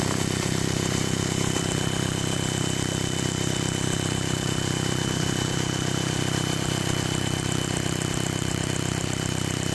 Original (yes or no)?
no